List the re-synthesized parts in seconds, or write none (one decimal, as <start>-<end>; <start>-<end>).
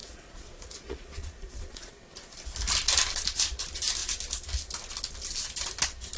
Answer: 0.0-1.9